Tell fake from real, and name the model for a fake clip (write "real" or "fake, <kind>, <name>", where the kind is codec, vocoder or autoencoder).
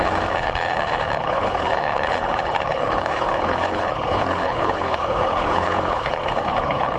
fake, codec, HILCodec